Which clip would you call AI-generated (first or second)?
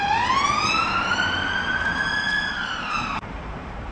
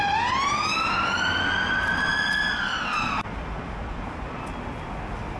first